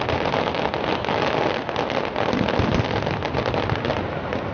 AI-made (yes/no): no